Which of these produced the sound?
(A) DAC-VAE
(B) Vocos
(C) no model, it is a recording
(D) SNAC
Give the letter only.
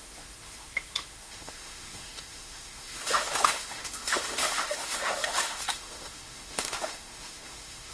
A